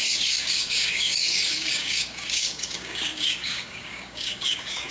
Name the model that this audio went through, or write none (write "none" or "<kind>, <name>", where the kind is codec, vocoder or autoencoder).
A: codec, DAC